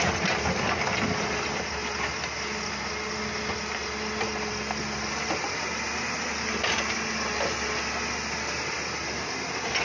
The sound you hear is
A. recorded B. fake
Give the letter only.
A